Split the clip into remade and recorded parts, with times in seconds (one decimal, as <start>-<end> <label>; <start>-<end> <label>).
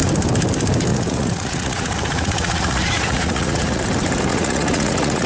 0.0-0.9 recorded; 0.9-3.8 remade; 3.8-4.3 recorded; 4.3-5.3 remade